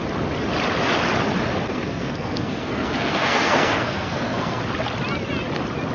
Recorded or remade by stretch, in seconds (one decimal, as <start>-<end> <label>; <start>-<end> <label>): 0.0-1.7 recorded; 1.7-4.6 remade; 4.6-5.9 recorded